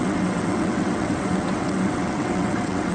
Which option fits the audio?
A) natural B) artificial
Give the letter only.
B